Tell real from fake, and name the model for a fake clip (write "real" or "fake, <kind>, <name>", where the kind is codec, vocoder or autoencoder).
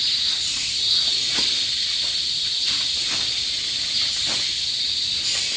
real